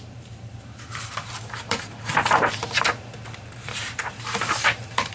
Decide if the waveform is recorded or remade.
remade